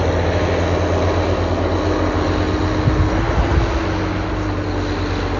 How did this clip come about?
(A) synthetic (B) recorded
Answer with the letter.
B